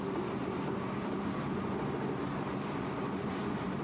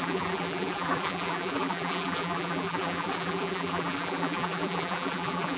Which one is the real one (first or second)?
first